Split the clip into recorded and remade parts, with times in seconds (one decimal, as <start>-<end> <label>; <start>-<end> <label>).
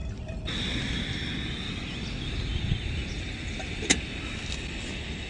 0.0-5.3 recorded